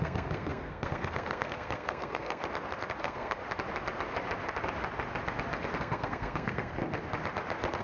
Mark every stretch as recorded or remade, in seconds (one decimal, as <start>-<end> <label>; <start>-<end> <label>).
0.0-2.4 remade; 2.4-3.0 recorded; 3.0-3.4 remade; 3.4-5.8 recorded; 5.8-6.8 remade; 6.8-7.8 recorded